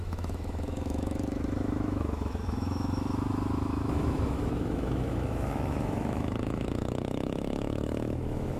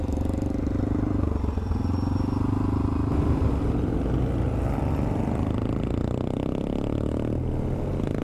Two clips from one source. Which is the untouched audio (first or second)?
second